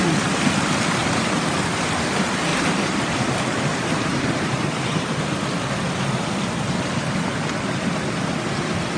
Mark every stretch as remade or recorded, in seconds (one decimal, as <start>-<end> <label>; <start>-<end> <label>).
0.0-1.0 recorded; 1.0-1.5 remade; 1.5-2.5 recorded; 2.5-5.5 remade; 5.5-9.0 recorded